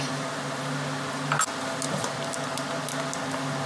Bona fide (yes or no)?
yes